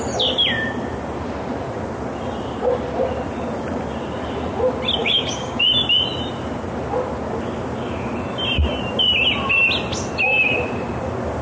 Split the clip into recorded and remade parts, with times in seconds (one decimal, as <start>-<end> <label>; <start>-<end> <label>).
0.0-5.0 recorded; 5.0-5.6 remade; 5.6-11.4 recorded